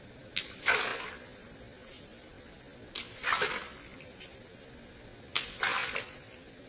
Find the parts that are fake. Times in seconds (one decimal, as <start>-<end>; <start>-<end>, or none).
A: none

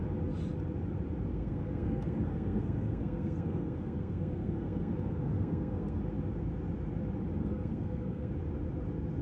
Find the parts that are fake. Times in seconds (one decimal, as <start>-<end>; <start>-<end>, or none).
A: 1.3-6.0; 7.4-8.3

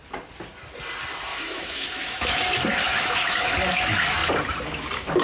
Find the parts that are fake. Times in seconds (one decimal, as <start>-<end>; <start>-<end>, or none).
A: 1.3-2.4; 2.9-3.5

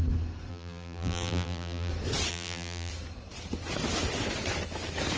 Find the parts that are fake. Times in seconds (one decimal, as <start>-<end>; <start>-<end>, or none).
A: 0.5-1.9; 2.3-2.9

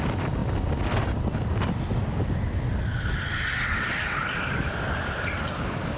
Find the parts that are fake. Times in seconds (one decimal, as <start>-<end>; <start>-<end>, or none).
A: none